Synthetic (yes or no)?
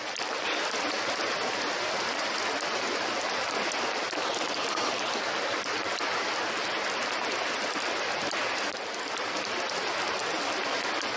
no